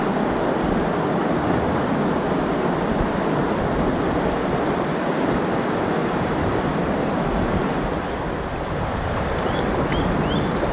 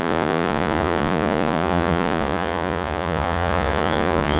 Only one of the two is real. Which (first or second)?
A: first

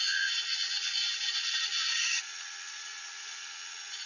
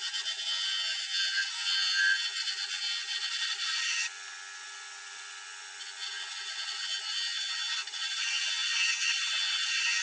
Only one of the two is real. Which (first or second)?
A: second